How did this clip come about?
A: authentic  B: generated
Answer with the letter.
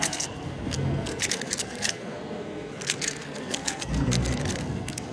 B